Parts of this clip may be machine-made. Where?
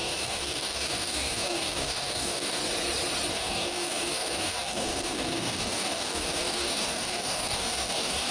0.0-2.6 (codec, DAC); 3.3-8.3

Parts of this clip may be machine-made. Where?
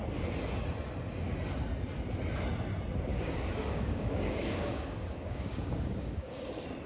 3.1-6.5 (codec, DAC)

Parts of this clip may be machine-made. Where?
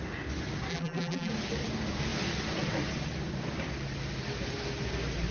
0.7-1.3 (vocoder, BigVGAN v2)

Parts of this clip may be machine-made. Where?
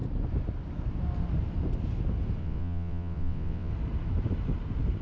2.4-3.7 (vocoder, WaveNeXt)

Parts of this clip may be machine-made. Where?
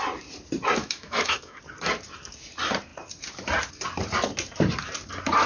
0.8-1.6 (autoencoder, DAC-VAE)